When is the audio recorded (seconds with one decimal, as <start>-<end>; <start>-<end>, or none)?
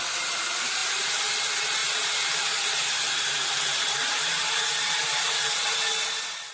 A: 0.0-0.8; 1.3-1.8; 5.4-6.5